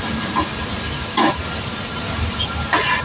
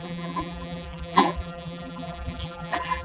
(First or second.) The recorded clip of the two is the first